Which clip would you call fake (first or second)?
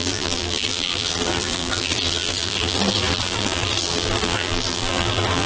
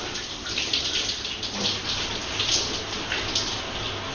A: first